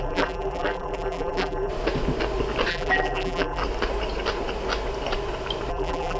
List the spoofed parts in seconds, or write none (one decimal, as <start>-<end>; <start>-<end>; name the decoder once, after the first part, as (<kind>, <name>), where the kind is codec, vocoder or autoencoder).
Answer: 0.0-1.7 (vocoder, BigVGAN v2); 2.7-3.6; 5.7-6.2